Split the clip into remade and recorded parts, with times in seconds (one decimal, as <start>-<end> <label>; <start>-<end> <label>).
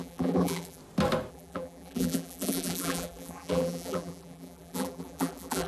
0.0-0.8 remade; 0.8-1.3 recorded; 1.3-5.7 remade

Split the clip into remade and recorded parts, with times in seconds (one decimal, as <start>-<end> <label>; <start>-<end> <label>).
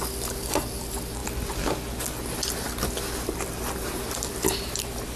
0.0-5.2 recorded